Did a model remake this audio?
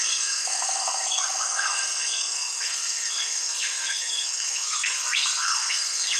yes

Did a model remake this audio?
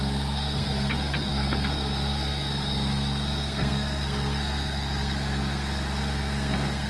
yes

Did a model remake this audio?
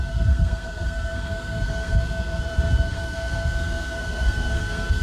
yes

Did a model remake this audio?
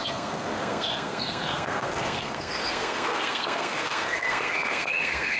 yes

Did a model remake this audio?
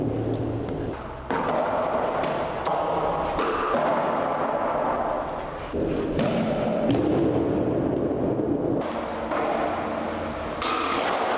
no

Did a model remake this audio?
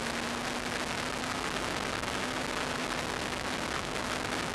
no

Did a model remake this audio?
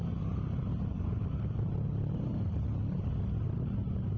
no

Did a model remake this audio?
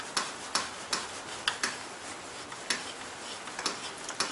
no